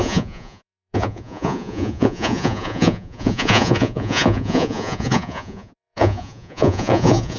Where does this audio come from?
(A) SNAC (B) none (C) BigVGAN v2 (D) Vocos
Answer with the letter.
D